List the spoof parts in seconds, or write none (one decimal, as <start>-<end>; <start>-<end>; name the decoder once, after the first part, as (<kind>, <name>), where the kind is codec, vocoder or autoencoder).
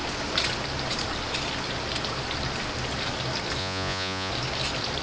3.6-4.3 (vocoder, Vocos)